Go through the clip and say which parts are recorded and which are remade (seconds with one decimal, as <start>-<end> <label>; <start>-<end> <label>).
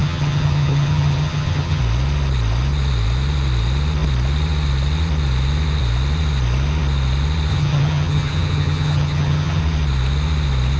0.0-1.8 remade; 1.8-7.5 recorded; 7.5-9.6 remade; 9.6-10.8 recorded